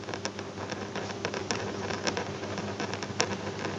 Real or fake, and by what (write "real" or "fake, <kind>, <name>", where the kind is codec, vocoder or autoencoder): real